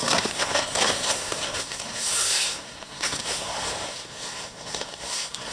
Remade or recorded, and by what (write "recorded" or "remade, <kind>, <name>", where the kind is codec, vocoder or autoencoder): remade, codec, SNAC